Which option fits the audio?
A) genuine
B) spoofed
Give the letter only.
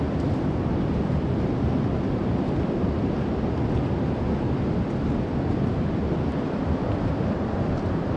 A